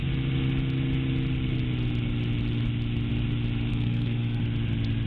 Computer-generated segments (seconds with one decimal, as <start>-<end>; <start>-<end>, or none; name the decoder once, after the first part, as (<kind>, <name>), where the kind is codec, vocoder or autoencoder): 3.7-4.4 (codec, SNAC)